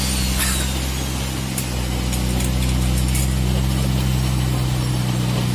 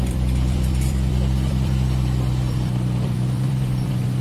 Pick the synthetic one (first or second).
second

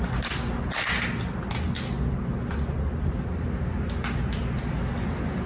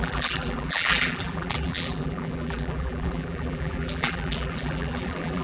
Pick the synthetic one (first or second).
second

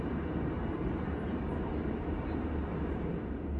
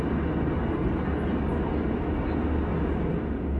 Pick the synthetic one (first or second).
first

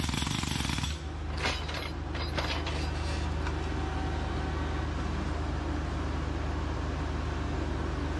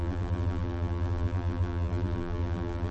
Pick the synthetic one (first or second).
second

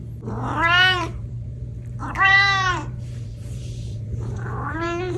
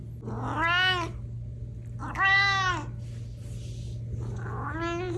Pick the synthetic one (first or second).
first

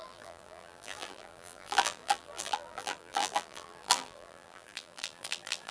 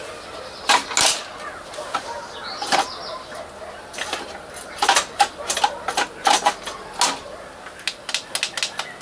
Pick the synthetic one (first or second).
first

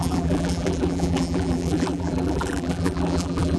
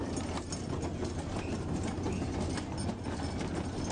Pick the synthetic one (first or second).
first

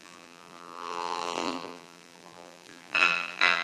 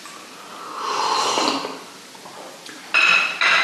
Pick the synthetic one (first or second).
first